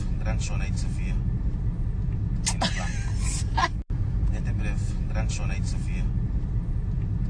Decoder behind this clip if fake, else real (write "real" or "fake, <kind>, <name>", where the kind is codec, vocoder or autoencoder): real